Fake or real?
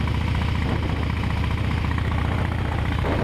real